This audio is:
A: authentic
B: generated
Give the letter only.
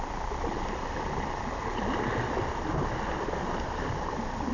A